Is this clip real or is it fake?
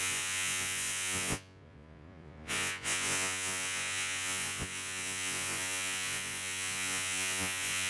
fake